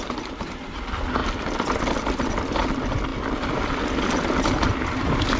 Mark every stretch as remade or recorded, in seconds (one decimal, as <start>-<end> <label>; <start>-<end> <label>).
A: 0.0-5.4 recorded